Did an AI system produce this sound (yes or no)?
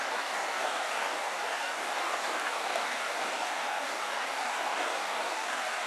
yes